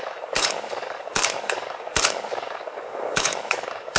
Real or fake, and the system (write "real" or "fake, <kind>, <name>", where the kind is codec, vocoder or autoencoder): fake, codec, DAC